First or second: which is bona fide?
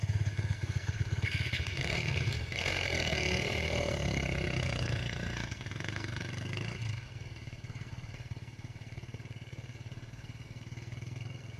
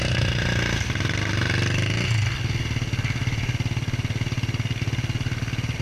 second